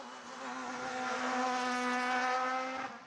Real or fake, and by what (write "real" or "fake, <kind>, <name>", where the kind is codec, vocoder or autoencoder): real